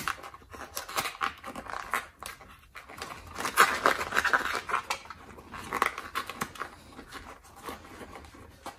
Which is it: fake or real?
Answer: real